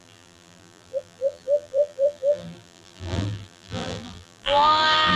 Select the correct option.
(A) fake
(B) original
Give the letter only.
A